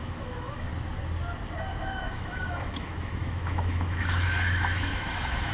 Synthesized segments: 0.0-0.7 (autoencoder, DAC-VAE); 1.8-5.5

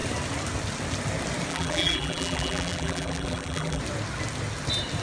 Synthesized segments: 1.5-3.8 (vocoder, BigVGAN v2)

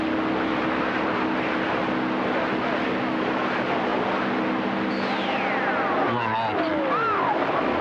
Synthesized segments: none

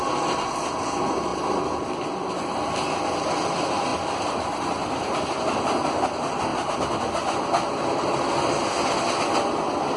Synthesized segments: none

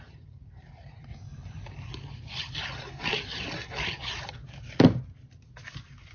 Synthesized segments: 0.0-1.1 (vocoder, BigVGAN v2); 4.8-6.1

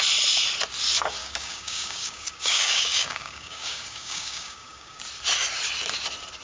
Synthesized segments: 1.2-5.0 (codec, DAC)